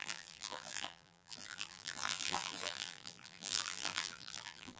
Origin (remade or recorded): remade